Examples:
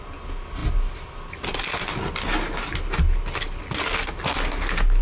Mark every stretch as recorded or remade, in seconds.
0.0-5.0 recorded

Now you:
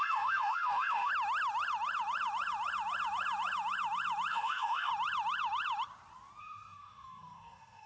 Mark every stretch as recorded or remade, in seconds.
0.0-1.1 remade; 1.1-4.3 recorded; 4.3-4.9 remade; 4.9-6.4 recorded; 6.4-7.9 remade

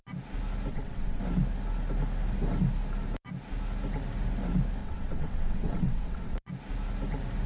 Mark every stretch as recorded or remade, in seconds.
0.0-0.7 recorded; 0.7-1.2 remade; 1.2-4.8 recorded; 4.8-6.5 remade; 6.5-7.5 recorded

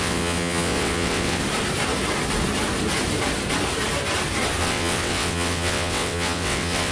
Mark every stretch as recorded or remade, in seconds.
0.0-1.4 remade; 1.4-4.6 recorded; 4.6-6.9 remade

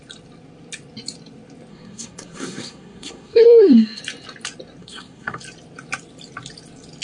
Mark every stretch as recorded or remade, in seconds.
0.0-1.7 recorded; 1.7-4.0 remade; 4.0-4.8 recorded; 4.8-5.4 remade; 5.4-7.0 recorded

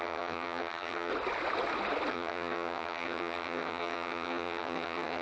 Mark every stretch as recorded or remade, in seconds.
0.0-1.1 remade; 1.1-2.1 recorded; 2.1-5.2 remade

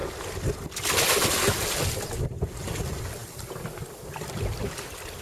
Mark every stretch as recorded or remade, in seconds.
0.0-5.2 recorded

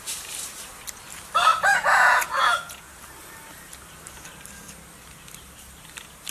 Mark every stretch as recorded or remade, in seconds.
0.0-1.5 recorded; 1.5-3.0 remade; 3.0-6.3 recorded